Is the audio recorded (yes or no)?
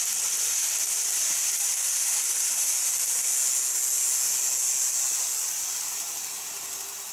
yes